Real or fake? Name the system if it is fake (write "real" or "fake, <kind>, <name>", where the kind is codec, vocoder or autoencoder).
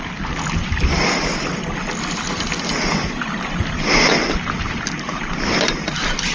real